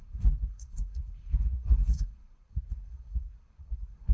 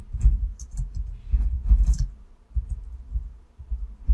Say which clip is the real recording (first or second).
second